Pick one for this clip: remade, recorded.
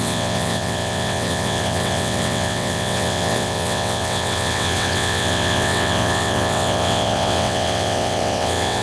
remade